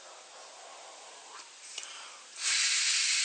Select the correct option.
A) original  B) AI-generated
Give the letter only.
B